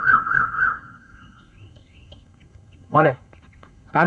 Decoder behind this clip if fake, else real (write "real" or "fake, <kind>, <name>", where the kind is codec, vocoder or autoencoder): fake, codec, SNAC